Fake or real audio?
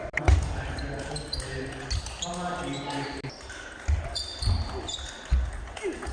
real